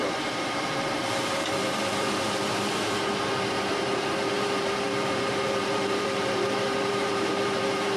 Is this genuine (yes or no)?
no